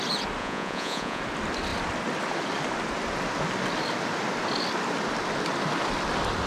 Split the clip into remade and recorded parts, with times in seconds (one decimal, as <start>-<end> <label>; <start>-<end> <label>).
0.0-0.4 recorded; 0.4-1.2 remade; 1.2-6.5 recorded